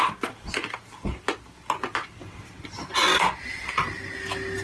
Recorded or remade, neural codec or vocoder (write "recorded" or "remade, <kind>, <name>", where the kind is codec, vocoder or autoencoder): recorded